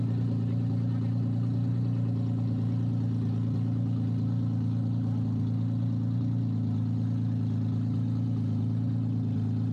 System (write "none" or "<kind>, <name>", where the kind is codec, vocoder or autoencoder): none